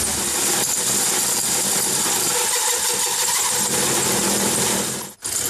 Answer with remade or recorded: recorded